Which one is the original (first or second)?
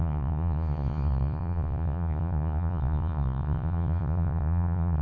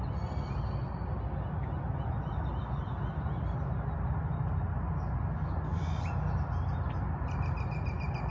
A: second